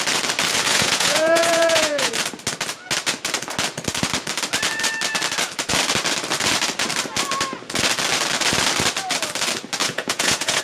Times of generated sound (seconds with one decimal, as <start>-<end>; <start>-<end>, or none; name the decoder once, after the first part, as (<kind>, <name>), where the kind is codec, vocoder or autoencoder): 0.7-2.1 (vocoder, Vocos); 9.8-10.6